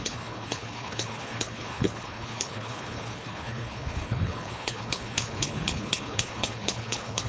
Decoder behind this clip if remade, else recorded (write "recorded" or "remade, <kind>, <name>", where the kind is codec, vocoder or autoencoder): remade, codec, HILCodec